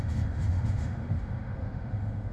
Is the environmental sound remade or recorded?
remade